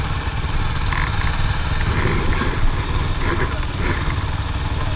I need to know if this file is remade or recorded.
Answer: recorded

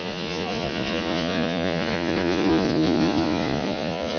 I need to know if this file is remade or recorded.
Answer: remade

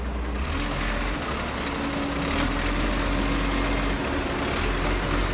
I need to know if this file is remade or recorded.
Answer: recorded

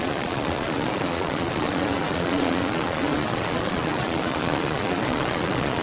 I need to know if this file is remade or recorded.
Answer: remade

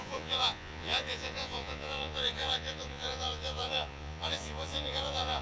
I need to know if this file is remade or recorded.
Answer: remade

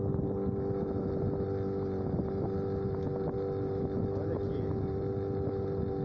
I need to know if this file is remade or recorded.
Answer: recorded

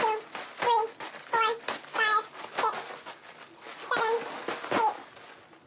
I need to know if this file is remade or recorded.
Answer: recorded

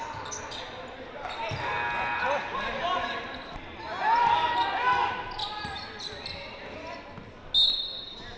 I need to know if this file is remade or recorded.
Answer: recorded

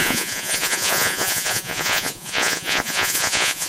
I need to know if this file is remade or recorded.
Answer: remade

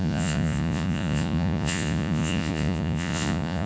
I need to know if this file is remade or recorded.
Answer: remade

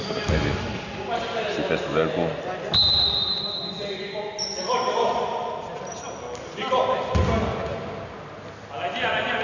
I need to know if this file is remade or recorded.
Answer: recorded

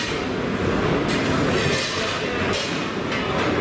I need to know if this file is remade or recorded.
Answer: recorded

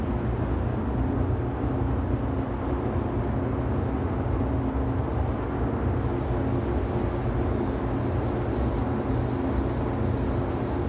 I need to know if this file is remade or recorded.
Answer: recorded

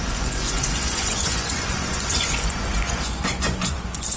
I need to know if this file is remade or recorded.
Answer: remade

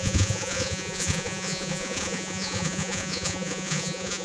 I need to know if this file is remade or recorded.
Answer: remade